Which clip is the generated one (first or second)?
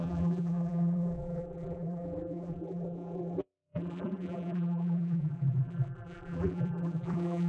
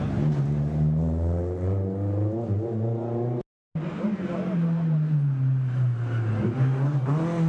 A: first